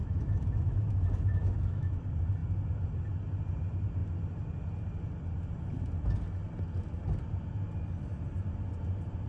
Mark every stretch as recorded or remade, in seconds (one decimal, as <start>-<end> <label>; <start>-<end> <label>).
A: 0.0-2.0 remade; 2.0-9.3 recorded